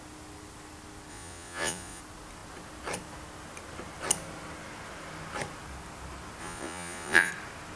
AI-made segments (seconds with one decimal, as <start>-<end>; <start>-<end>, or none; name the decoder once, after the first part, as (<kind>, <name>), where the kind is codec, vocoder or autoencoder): 1.1-2.0 (vocoder, Vocos); 6.4-7.3